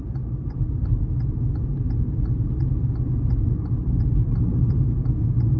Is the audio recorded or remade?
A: recorded